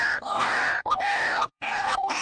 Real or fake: fake